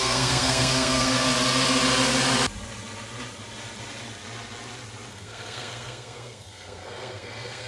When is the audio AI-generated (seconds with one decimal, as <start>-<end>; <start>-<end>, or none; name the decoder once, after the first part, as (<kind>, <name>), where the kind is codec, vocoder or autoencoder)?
0.0-1.3 (codec, SNAC); 5.1-7.7